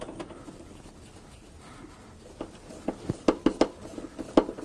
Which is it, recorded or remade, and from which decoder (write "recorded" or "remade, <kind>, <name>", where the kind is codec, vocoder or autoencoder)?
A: recorded